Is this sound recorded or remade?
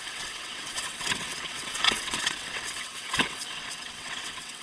remade